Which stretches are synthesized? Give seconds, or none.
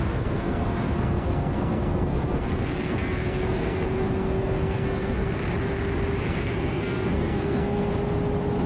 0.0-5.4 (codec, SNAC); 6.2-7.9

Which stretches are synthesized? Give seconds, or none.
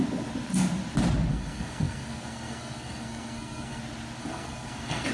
1.3-3.8 (codec, SNAC); 4.2-5.1